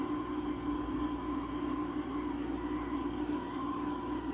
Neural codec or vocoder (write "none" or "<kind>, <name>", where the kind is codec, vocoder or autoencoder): none